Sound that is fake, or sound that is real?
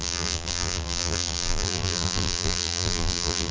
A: fake